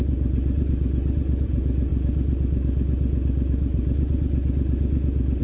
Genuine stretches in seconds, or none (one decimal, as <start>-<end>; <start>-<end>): 0.0-5.4